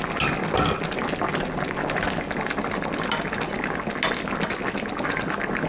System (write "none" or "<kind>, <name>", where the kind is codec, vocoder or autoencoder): none